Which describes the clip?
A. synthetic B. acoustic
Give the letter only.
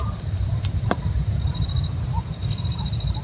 B